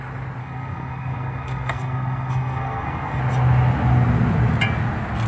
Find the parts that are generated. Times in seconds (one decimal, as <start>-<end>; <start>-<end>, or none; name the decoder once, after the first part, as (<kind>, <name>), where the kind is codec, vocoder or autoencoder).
0.4-3.2 (codec, SNAC)